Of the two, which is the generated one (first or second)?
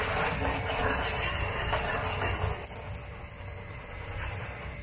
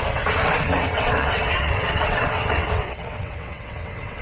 second